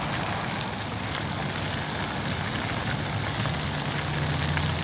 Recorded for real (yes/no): yes